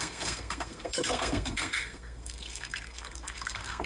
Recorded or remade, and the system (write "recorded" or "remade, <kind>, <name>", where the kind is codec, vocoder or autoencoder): remade, codec, SNAC